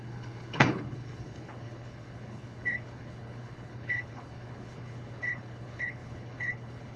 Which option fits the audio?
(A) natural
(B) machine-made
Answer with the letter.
B